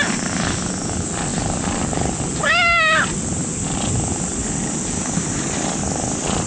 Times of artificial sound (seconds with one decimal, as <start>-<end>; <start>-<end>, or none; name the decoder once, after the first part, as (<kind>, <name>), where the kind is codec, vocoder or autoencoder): none